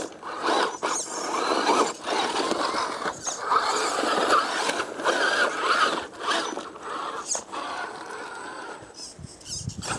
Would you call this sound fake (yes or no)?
no